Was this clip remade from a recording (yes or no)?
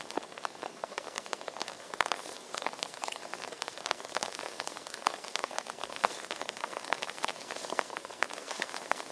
yes